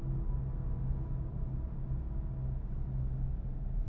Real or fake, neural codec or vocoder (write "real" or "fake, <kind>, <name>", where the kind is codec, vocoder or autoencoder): real